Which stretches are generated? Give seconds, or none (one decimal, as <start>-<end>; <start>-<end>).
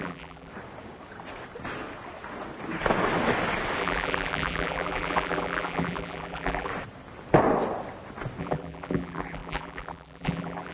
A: 0.0-0.5; 3.8-6.7; 8.4-10.7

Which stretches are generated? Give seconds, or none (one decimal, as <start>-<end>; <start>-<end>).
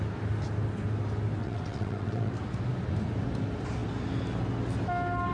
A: 1.4-2.3